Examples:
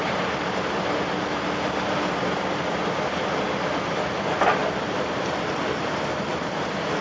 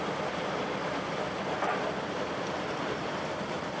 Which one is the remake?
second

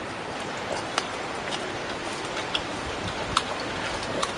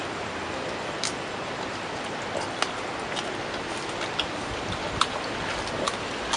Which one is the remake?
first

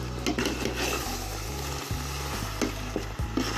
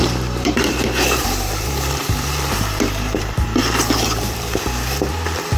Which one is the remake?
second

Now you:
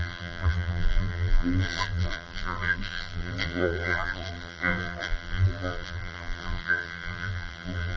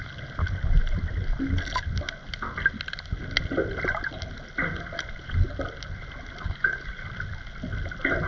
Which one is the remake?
first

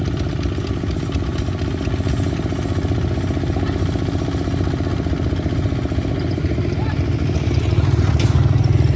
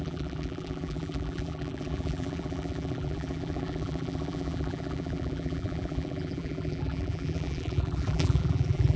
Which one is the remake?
second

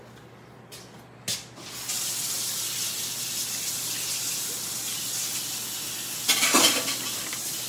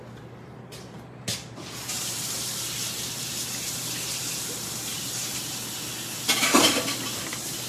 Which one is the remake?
second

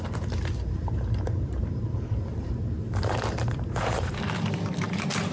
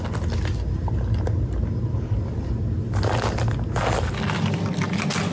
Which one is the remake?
first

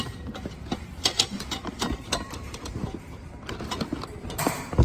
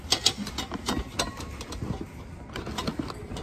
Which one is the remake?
first